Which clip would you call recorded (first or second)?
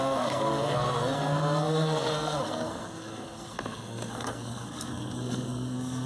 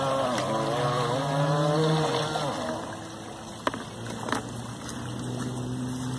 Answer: second